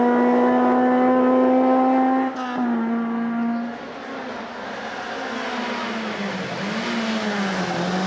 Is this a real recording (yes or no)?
yes